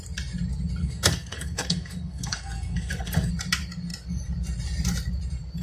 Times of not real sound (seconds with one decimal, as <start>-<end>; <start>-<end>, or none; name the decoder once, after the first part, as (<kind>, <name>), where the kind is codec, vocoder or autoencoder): 0.8-3.3 (codec, SNAC)

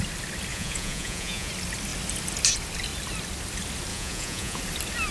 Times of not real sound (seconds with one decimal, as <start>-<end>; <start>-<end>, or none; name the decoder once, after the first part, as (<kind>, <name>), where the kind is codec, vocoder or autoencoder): 0.5-1.5 (vocoder, Vocos); 3.9-4.6

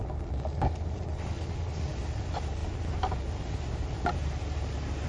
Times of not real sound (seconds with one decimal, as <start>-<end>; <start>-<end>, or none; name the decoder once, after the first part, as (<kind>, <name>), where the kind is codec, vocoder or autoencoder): none

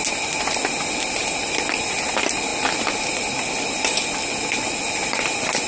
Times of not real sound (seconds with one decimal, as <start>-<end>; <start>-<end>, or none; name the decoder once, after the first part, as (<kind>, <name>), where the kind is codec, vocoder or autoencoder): none

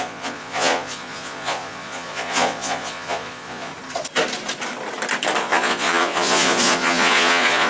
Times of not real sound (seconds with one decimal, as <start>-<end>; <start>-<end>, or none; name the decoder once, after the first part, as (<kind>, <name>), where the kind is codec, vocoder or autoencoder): 0.0-3.7 (vocoder, Vocos); 5.4-7.7